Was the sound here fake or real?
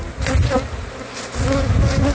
real